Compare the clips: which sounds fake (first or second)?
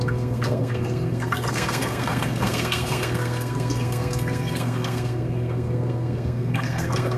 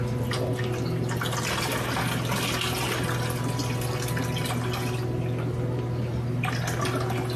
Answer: first